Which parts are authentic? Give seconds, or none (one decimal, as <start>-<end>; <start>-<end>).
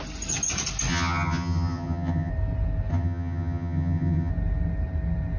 0.0-0.9; 2.3-2.9; 4.3-5.4